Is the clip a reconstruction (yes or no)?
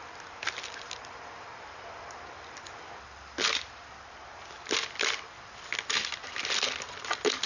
no